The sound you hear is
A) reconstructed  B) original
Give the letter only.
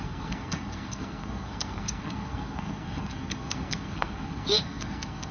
A